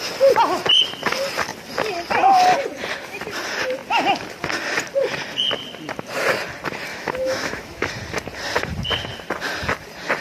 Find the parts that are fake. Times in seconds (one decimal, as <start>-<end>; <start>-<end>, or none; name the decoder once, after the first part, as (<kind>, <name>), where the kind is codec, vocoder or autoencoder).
6.9-7.9 (autoencoder, DAC-VAE)